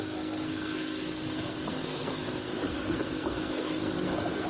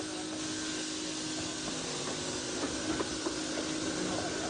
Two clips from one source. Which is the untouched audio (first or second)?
second